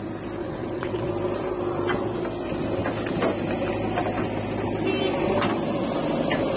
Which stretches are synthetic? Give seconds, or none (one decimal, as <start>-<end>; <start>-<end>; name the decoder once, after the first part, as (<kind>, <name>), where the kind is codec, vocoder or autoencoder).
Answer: 0.4-1.1 (vocoder, WaveNeXt)